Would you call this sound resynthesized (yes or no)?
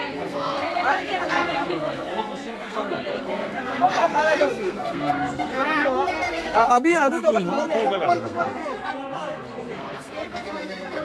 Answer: yes